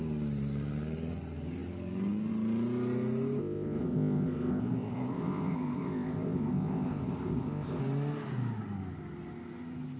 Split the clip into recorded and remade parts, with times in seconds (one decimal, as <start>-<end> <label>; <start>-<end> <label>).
0.0-3.4 recorded; 3.4-7.8 remade; 7.8-10.0 recorded